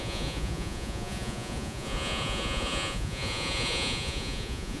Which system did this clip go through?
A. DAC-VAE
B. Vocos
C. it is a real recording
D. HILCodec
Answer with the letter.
B